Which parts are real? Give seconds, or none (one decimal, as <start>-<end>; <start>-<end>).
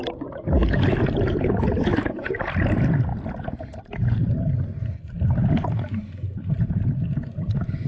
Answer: 0.0-7.9